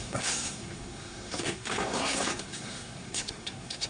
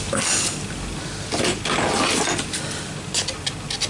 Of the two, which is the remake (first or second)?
first